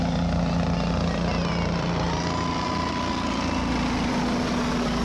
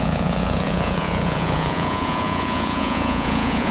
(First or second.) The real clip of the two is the first